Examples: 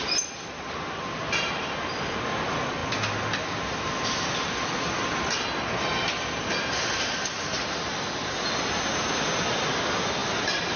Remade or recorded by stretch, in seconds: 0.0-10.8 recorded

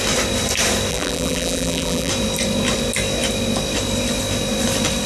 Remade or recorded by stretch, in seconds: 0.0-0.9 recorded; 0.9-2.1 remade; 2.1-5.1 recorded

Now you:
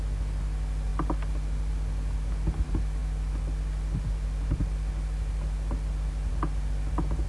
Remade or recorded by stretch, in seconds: 0.0-7.3 recorded

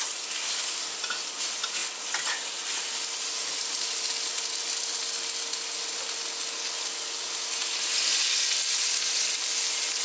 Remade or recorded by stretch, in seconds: 0.0-10.0 recorded

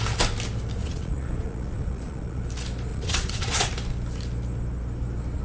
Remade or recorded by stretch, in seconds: 0.0-0.8 recorded; 0.8-2.4 remade; 2.4-2.9 recorded; 2.9-3.7 remade; 3.7-5.4 recorded

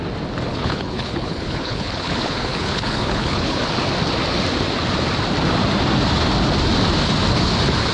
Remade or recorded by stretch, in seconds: 0.0-0.5 recorded; 0.5-3.6 remade; 3.6-7.9 recorded